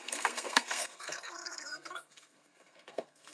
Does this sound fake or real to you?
fake